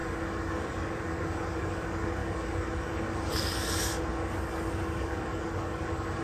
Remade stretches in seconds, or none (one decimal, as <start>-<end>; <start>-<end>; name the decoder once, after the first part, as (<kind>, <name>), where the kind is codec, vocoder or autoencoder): 0.0-6.2 (codec, DAC)